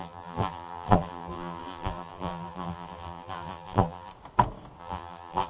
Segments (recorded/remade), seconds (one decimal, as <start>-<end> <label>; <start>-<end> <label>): 0.0-4.1 remade; 4.1-4.8 recorded; 4.8-5.5 remade